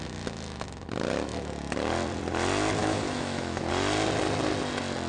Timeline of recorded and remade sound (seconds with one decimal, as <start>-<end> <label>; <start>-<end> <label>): 0.0-2.8 recorded; 2.8-3.7 remade; 3.7-5.1 recorded